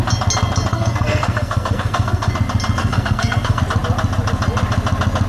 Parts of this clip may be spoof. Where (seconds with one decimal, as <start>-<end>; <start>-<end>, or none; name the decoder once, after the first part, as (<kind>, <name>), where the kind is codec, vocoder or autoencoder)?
0.7-2.3 (codec, SNAC); 2.8-3.6